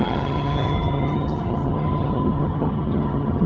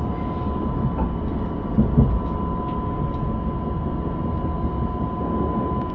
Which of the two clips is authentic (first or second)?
second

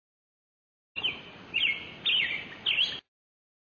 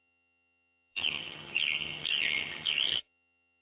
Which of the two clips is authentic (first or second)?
first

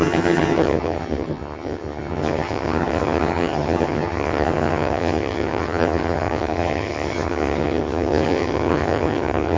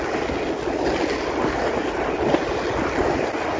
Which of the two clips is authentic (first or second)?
second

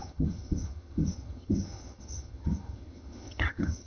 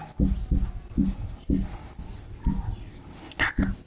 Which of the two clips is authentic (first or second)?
second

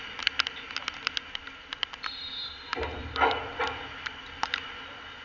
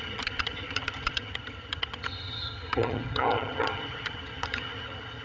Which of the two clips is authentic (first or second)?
first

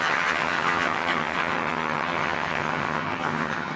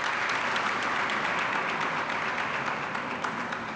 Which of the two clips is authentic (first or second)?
second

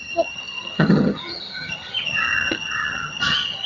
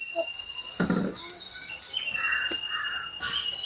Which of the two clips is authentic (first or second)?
second